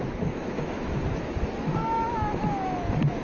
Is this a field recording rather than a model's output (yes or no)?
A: no